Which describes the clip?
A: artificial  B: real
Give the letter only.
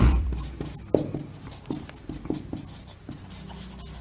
A